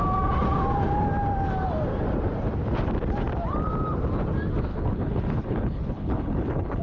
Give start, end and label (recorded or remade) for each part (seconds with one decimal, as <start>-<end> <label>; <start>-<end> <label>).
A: 0.0-4.7 recorded; 4.7-6.8 remade